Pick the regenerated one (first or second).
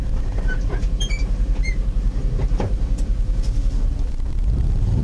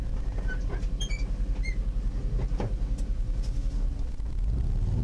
first